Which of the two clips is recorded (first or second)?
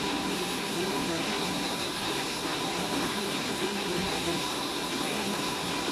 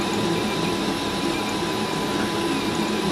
second